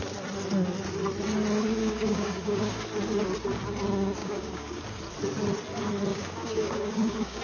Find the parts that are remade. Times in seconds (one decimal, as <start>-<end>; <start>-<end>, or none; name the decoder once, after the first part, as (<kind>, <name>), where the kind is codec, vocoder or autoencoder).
1.8-2.8 (codec, DAC); 4.2-4.8; 6.1-7.4